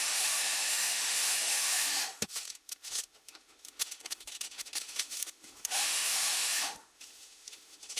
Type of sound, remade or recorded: remade